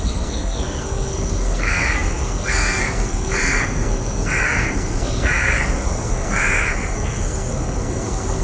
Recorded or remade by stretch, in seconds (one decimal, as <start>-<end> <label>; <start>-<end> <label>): 0.0-8.4 remade